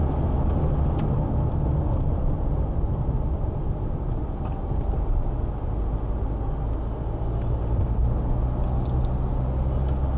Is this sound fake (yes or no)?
no